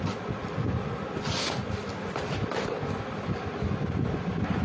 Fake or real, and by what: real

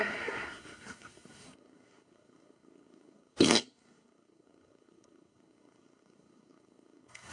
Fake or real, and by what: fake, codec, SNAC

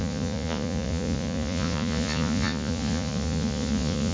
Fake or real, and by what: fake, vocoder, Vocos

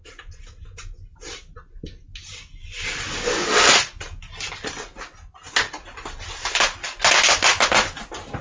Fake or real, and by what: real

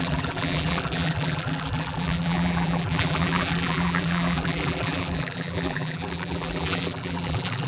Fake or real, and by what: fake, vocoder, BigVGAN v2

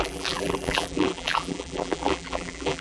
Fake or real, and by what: fake, vocoder, BigVGAN v2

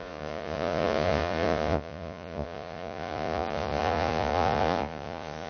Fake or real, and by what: fake, vocoder, Vocos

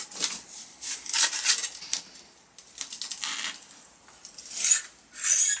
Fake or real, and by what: real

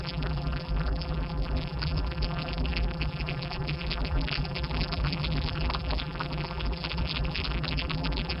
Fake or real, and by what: fake, vocoder, BigVGAN v2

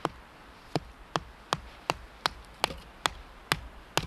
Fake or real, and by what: real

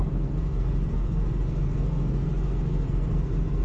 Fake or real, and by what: fake, codec, SNAC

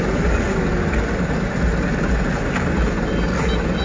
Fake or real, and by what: real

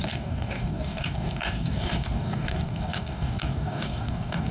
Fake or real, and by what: fake, codec, DAC